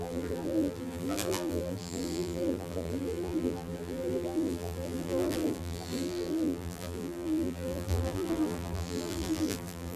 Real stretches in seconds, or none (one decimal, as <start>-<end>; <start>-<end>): none